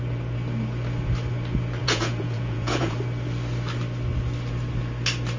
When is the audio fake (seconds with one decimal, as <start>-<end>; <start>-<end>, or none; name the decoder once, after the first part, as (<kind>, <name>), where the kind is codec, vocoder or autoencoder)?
1.8-3.0 (vocoder, Vocos)